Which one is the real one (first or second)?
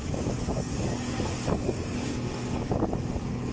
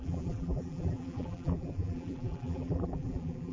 first